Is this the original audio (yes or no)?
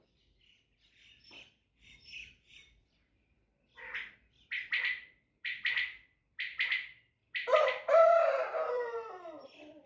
no